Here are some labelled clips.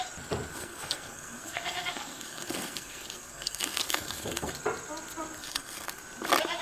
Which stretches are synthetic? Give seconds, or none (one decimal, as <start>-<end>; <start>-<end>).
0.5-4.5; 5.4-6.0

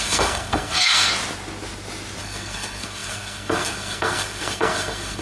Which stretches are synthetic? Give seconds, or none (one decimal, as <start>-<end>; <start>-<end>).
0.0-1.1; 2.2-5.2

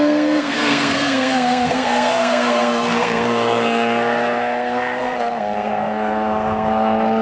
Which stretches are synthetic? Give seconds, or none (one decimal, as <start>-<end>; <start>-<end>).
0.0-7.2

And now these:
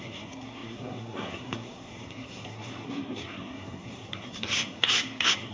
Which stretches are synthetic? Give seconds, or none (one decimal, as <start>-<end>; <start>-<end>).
0.0-5.5